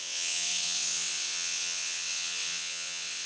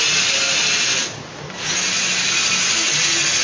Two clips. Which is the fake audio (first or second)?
first